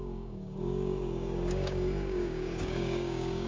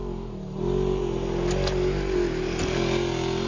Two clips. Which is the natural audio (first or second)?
second